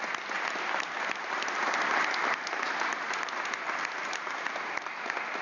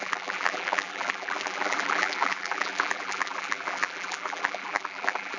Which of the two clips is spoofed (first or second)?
second